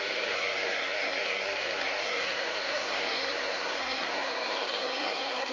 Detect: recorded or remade remade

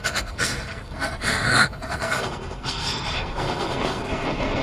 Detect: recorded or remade remade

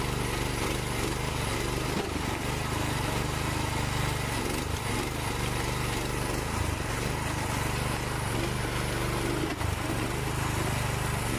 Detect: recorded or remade recorded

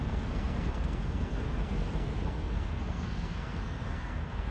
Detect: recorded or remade remade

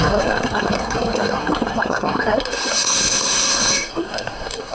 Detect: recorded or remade remade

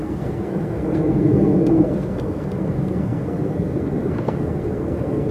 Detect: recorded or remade remade